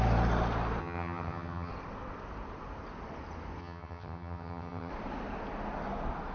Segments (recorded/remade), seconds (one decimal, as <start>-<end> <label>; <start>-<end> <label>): 0.0-0.8 recorded; 0.8-1.7 remade; 1.7-3.6 recorded; 3.6-4.9 remade; 4.9-6.3 recorded